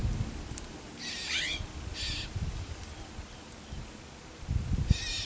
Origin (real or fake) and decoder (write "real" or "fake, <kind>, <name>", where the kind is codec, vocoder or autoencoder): real